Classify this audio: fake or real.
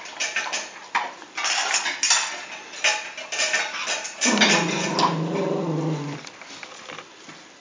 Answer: real